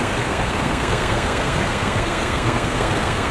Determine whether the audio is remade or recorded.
remade